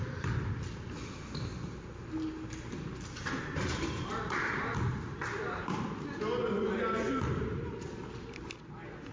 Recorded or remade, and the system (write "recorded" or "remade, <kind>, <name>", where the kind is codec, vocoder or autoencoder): recorded